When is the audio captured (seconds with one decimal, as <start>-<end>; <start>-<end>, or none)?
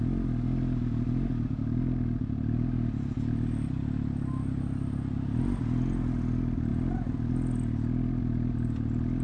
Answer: 0.0-9.2